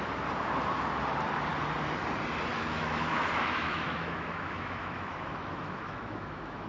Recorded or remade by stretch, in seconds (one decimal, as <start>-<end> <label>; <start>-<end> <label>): 0.0-2.5 recorded; 2.5-6.7 remade